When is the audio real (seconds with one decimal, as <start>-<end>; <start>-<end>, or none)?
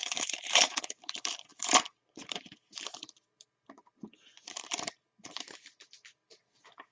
none